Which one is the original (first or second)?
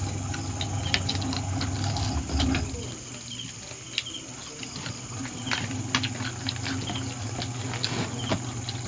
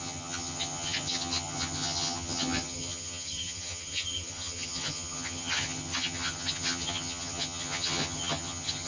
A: first